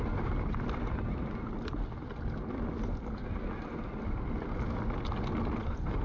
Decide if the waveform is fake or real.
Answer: real